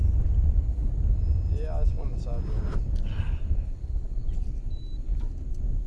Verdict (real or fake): real